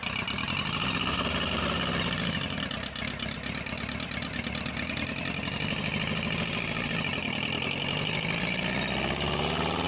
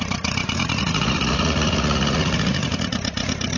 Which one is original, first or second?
first